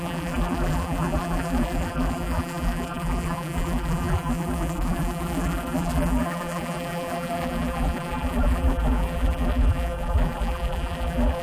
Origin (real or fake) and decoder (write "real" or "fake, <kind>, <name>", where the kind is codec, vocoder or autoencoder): fake, vocoder, BigVGAN v2